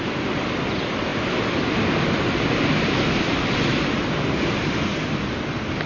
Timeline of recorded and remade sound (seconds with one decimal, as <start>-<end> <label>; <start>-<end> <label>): 0.0-5.9 recorded